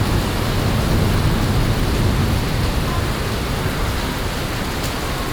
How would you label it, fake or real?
real